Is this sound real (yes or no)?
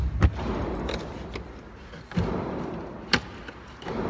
yes